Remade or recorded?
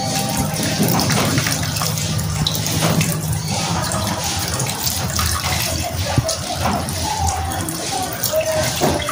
remade